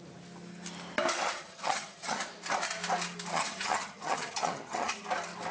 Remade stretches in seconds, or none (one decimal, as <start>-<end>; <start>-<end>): 1.2-2.2; 3.3-5.0